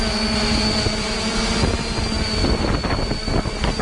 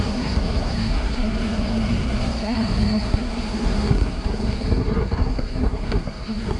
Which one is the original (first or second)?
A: first